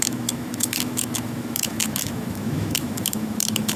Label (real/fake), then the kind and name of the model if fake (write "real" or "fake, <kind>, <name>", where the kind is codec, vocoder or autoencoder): fake, autoencoder, DAC-VAE